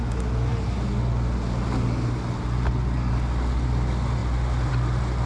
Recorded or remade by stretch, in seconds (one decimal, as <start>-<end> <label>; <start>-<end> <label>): 0.0-5.3 recorded